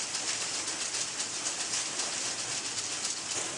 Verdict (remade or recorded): recorded